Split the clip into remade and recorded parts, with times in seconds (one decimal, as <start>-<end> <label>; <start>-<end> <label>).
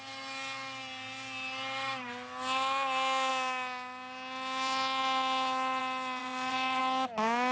0.0-6.2 recorded; 6.2-6.8 remade; 6.8-7.5 recorded